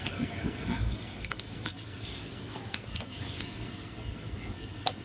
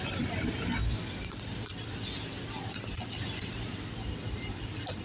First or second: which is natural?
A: second